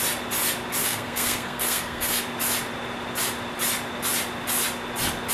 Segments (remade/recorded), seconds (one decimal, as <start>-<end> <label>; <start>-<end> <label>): 0.0-0.8 recorded; 0.8-2.2 remade; 2.2-5.3 recorded